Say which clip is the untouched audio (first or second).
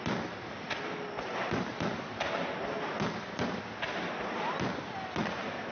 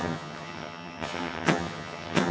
first